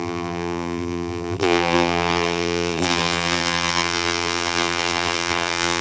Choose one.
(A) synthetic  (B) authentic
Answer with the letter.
A